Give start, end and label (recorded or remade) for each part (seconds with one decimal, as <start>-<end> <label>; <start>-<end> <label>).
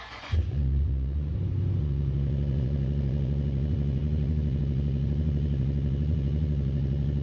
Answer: 0.0-1.3 remade; 1.3-1.8 recorded; 1.8-7.2 remade